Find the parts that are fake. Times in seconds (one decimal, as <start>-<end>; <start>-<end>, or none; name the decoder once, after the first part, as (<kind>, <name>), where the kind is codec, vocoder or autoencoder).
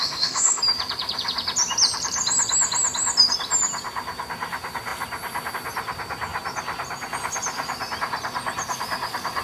0.0-0.6 (autoencoder, DAC-VAE)